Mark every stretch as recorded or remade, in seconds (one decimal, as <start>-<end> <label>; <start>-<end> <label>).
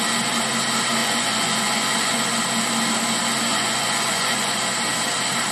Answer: 0.0-1.0 recorded; 1.0-2.2 remade; 2.2-3.5 recorded; 3.5-4.6 remade; 4.6-5.5 recorded